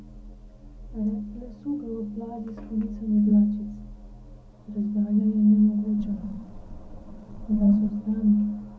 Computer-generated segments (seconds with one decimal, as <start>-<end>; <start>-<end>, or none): 6.0-7.9